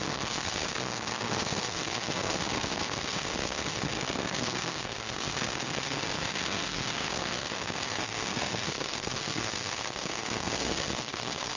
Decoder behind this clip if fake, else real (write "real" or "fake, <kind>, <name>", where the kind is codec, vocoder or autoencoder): fake, codec, SNAC